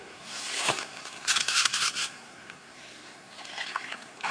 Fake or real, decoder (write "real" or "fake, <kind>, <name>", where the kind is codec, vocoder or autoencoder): fake, codec, SNAC